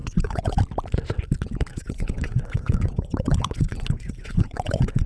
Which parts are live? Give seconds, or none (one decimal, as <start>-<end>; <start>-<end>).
0.6-1.7